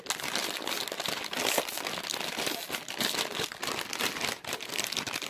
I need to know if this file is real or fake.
real